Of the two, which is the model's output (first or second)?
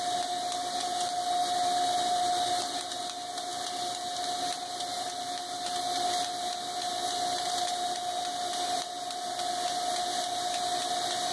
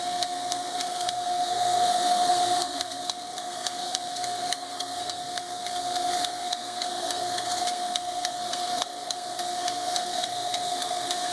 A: second